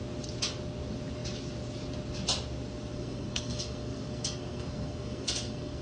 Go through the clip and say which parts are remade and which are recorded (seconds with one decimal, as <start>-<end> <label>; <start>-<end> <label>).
0.0-2.9 recorded; 2.9-5.8 remade